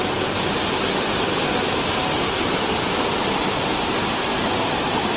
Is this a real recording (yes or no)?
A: yes